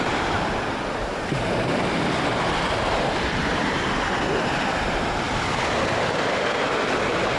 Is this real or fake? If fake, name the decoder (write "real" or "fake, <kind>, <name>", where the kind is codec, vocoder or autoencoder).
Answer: real